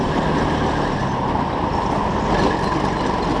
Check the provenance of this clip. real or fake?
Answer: real